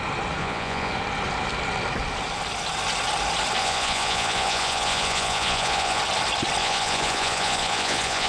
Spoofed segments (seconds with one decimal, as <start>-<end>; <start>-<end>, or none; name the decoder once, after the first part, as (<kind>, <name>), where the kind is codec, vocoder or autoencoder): 0.4-0.9 (vocoder, Vocos); 3.6-6.0; 6.6-8.3